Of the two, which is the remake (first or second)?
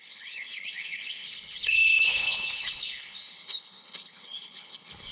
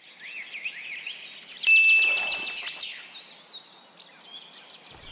first